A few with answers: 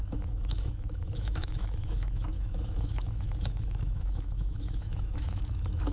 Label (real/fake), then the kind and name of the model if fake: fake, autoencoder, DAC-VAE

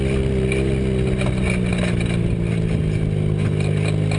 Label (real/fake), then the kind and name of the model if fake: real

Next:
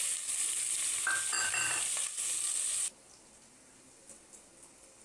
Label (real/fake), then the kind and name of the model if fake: real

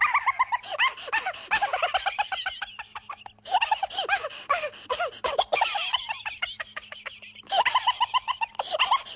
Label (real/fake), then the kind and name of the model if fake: real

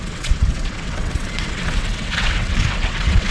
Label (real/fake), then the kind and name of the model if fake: fake, vocoder, WaveNeXt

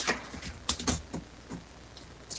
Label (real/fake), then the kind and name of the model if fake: real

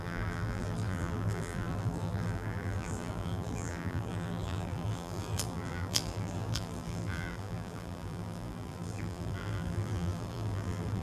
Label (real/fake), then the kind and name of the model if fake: fake, vocoder, BigVGAN v2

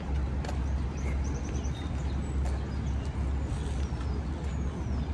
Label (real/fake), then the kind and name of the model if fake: real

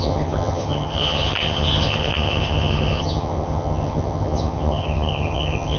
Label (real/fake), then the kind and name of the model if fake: fake, vocoder, HiFi-GAN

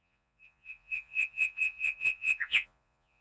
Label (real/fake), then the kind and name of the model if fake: fake, vocoder, Vocos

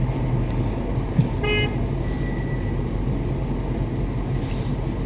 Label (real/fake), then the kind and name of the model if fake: real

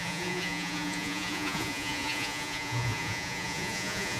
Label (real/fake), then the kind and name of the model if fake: fake, vocoder, Vocos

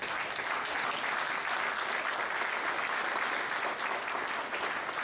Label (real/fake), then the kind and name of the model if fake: real